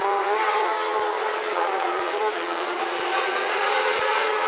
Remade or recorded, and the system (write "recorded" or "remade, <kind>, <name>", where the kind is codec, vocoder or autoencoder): remade, vocoder, Vocos